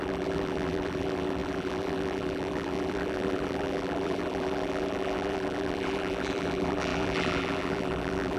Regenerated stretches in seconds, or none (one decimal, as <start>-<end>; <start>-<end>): 0.0-8.4